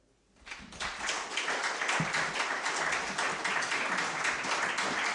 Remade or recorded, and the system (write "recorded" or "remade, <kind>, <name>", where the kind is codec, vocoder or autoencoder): recorded